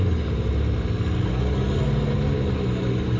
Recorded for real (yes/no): yes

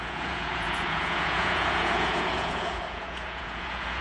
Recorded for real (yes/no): no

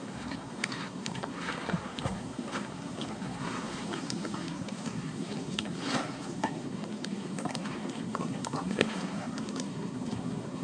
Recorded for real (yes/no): no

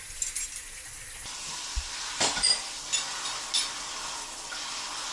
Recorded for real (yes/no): yes